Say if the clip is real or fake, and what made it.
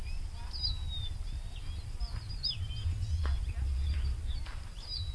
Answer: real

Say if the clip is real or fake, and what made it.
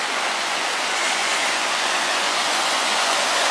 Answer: fake, vocoder, Vocos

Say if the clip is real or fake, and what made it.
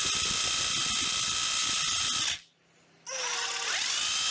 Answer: real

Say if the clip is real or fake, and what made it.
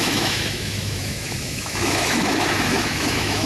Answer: fake, autoencoder, DAC-VAE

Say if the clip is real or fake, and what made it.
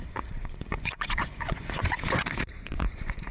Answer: fake, vocoder, Vocos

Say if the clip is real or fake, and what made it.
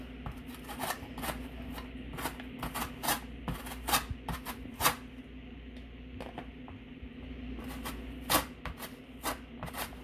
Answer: real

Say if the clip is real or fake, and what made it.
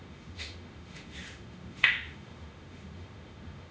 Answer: fake, autoencoder, DAC-VAE